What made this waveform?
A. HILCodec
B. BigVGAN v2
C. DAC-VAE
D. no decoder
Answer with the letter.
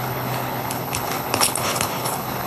A